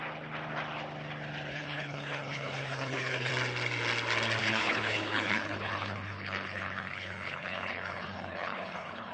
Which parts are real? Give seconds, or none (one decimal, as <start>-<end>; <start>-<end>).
0.0-1.5; 3.3-4.4